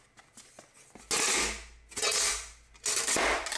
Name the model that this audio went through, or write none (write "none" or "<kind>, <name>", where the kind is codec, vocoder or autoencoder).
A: none